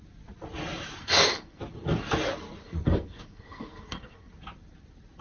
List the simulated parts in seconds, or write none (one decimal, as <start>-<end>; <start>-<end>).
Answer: 1.0-1.6; 2.6-4.3

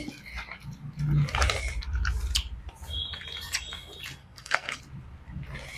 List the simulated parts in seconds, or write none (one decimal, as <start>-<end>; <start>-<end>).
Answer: 4.2-4.8

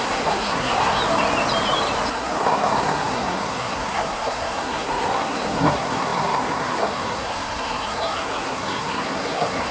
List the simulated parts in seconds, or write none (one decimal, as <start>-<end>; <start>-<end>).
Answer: 0.0-1.0; 2.1-9.7

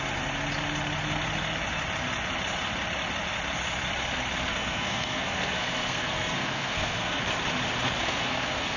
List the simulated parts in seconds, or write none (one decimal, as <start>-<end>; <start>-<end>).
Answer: 4.5-7.2; 8.0-8.8

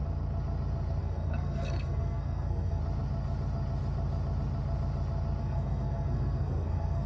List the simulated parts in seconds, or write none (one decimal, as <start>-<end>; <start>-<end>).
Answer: 1.0-2.8; 5.4-7.1

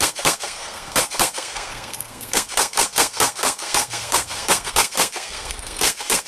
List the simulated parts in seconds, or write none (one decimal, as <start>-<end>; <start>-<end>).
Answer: 0.0-6.3